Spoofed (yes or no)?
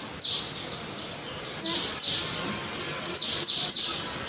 no